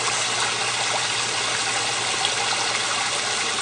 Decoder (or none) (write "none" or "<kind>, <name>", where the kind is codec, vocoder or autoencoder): none